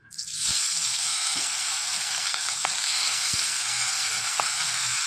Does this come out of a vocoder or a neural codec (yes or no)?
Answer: yes